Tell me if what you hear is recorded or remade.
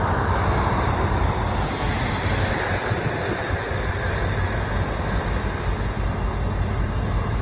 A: recorded